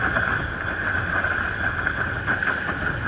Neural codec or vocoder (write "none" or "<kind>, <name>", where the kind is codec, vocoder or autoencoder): none